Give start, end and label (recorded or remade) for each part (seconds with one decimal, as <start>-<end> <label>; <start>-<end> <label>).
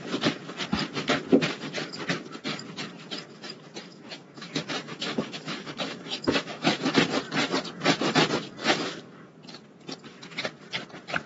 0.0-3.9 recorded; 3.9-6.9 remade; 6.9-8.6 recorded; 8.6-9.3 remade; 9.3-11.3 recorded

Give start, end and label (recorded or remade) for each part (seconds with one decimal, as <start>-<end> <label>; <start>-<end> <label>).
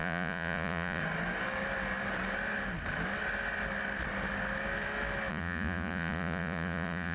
0.0-1.0 remade; 1.0-5.3 recorded; 5.3-7.1 remade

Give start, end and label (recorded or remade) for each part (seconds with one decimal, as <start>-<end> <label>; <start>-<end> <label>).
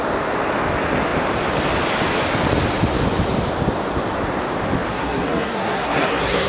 0.0-4.9 recorded; 4.9-6.5 remade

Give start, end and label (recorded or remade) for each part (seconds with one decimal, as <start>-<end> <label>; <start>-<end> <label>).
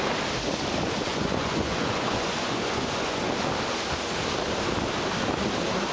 0.0-1.1 recorded; 1.1-3.2 remade; 3.2-5.9 recorded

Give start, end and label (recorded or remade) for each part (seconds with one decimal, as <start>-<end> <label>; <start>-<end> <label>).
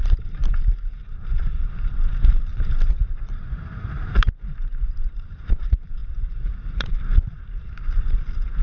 0.0-8.6 remade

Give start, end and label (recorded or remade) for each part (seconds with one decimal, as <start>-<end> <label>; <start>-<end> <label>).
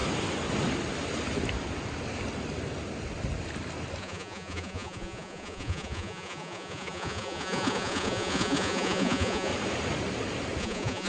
0.0-4.0 recorded; 4.0-9.5 remade; 9.5-10.6 recorded; 10.6-11.1 remade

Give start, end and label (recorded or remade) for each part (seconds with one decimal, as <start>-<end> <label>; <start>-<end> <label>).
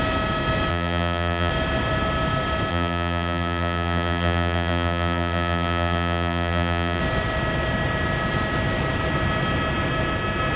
0.0-0.7 recorded; 0.7-1.5 remade; 1.5-2.7 recorded; 2.7-7.0 remade; 7.0-10.6 recorded